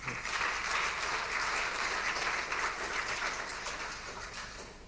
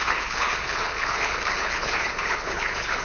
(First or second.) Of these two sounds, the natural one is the first